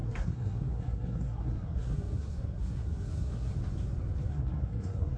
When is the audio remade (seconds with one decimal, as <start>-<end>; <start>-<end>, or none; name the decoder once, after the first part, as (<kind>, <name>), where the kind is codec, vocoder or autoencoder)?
0.0-3.5 (codec, SNAC); 4.3-5.2